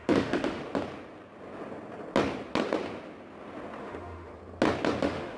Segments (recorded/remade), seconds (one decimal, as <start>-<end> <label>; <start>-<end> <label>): 0.0-0.6 remade; 0.6-3.8 recorded; 3.8-4.3 remade; 4.3-5.0 recorded; 5.0-5.4 remade